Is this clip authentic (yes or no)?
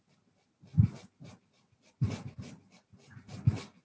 yes